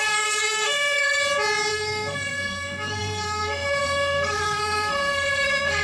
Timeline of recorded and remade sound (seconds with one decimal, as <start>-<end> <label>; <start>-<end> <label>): 0.0-1.2 remade; 1.2-1.7 recorded; 1.7-5.8 remade